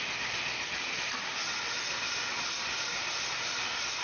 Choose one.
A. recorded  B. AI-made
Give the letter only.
A